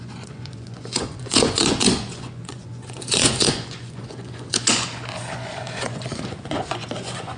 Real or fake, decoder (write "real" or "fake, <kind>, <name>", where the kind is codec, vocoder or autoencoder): fake, vocoder, Vocos